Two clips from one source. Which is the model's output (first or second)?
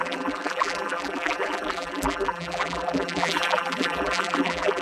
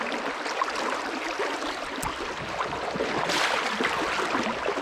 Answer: first